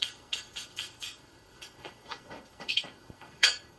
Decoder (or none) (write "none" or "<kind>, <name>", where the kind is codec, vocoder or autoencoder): codec, SNAC